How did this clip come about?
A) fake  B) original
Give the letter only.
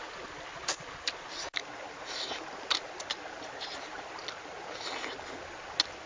B